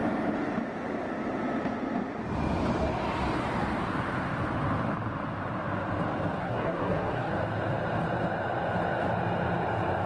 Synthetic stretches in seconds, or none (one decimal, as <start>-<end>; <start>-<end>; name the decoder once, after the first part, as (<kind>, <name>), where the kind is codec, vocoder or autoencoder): 6.4-7.3 (codec, SNAC)

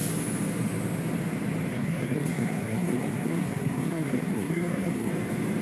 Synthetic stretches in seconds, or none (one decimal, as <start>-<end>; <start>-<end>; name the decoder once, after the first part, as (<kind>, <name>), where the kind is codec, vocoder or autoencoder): 1.7-5.1 (codec, SNAC)

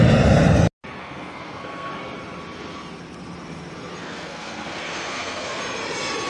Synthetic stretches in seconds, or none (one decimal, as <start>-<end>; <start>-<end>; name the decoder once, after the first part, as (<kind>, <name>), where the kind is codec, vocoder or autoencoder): 1.0-1.9 (codec, SNAC); 4.0-5.6

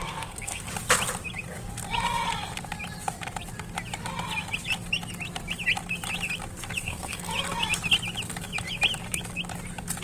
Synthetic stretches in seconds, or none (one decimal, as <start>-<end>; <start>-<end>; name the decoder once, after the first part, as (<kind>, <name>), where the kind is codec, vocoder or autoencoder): 0.0-0.6 (codec, SNAC); 6.8-7.3